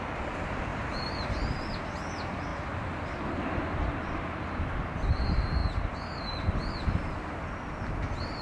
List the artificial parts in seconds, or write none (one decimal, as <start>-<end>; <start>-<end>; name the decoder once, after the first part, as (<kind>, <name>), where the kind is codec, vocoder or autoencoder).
0.7-1.3 (vocoder, BigVGAN v2)